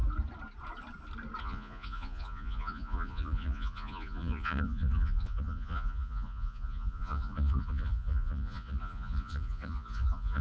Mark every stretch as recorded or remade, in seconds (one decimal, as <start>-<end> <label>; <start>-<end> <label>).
0.0-1.4 recorded; 1.4-10.4 remade